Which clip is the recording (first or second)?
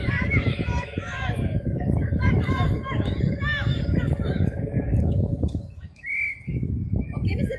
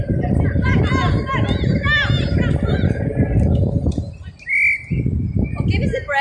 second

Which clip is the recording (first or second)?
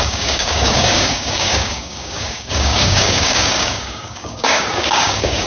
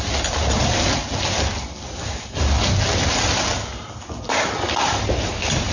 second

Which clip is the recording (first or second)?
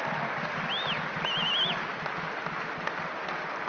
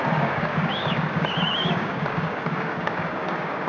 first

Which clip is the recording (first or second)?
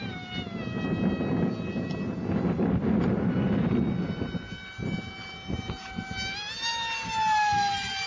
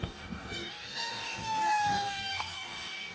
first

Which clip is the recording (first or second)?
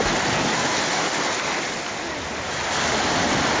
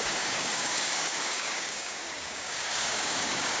first